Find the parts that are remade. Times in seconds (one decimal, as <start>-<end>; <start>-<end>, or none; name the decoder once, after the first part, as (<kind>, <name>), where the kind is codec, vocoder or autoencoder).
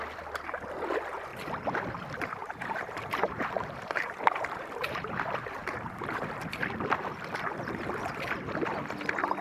2.4-5.9 (vocoder, BigVGAN v2)